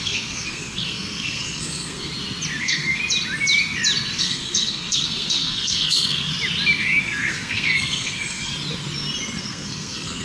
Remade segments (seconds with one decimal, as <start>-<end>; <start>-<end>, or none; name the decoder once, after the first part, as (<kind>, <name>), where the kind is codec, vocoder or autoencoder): 0.0-2.1 (codec, SNAC); 2.6-3.0; 4.2-6.3; 7.0-8.5; 9.4-10.2